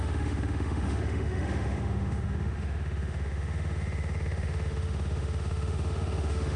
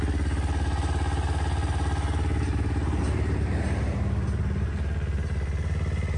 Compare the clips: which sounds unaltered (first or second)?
second